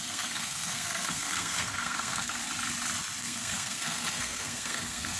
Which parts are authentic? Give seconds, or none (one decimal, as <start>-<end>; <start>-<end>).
2.4-3.2